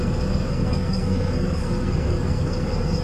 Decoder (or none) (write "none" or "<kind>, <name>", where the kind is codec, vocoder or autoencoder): codec, SNAC